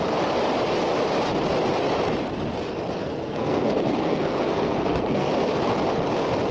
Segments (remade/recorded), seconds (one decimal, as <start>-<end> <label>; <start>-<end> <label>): 0.0-3.0 recorded; 3.0-5.3 remade; 5.3-6.5 recorded